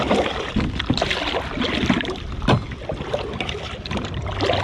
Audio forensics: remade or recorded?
recorded